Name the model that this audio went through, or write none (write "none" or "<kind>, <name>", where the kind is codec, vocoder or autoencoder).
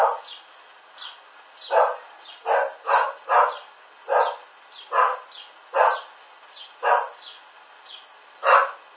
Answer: none